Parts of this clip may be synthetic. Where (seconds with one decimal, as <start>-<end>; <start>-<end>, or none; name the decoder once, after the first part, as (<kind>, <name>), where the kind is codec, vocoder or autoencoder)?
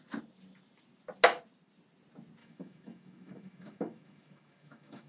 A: 2.4-5.1 (autoencoder, DAC-VAE)